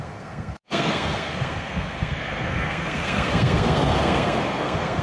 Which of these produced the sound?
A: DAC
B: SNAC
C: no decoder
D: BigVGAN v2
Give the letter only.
B